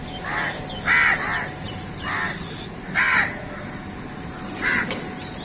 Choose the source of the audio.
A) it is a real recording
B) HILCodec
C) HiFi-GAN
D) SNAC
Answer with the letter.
A